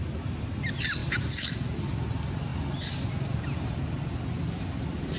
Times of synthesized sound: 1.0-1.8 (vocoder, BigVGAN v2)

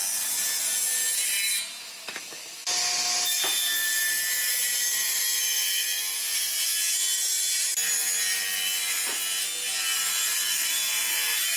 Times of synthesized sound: 3.5-5.2 (vocoder, BigVGAN v2); 10.0-11.6

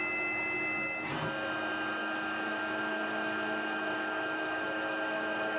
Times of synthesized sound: 2.0-5.6 (autoencoder, DAC-VAE)

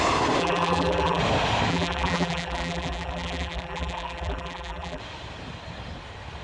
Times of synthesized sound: 0.4-1.2 (vocoder, BigVGAN v2); 1.7-5.0

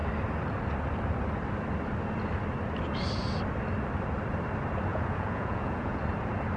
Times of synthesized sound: 4.9-6.0 (vocoder, Vocos)

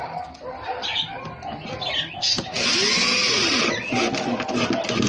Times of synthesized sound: none

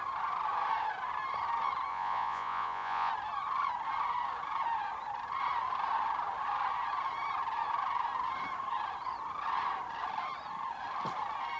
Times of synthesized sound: 1.9-3.1 (vocoder, Vocos)

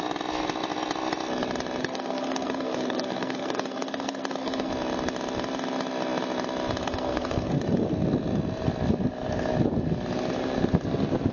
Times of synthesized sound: 1.8-4.7 (codec, SNAC); 6.8-7.6